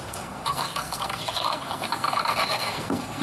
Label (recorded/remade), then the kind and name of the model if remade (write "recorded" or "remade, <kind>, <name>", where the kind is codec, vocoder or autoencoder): remade, codec, SNAC